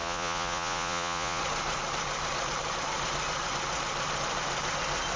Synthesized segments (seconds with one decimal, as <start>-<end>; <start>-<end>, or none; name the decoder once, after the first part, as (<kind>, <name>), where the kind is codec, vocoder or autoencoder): 0.0-1.4 (vocoder, Vocos)